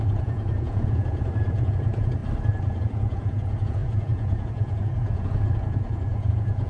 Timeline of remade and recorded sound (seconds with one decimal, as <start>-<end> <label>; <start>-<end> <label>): 0.0-2.2 remade; 2.2-2.8 recorded; 2.8-6.7 remade